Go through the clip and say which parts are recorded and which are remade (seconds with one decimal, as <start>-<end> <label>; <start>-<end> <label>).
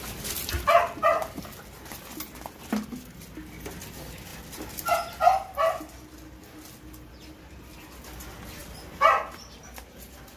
0.0-10.4 recorded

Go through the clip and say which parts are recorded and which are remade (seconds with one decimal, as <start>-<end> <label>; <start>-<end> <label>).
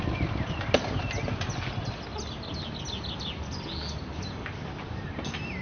0.0-5.6 recorded